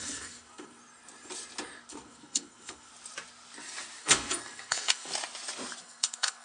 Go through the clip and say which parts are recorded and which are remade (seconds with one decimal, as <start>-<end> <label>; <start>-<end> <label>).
0.0-0.8 remade; 0.8-1.9 recorded; 1.9-2.9 remade; 2.9-4.0 recorded; 4.0-5.1 remade; 5.1-5.8 recorded; 5.8-6.4 remade